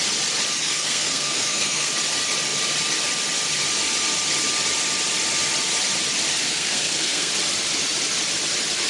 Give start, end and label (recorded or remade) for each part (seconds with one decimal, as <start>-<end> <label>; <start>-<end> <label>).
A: 0.0-0.6 recorded; 0.6-1.9 remade; 1.9-6.4 recorded; 6.4-7.3 remade; 7.3-8.9 recorded